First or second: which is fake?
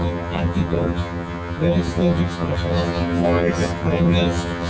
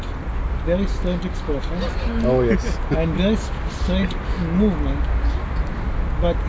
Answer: first